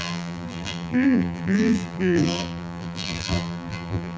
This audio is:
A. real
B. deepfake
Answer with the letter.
B